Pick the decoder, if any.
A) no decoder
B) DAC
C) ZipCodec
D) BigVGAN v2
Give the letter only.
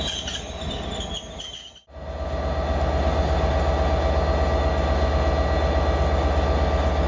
A